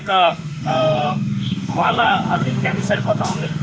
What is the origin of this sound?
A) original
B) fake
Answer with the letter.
B